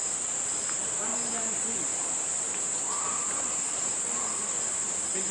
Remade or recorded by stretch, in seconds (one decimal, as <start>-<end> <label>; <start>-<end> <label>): 0.0-5.3 recorded